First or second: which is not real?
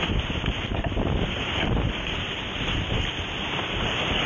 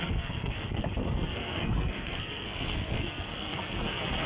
second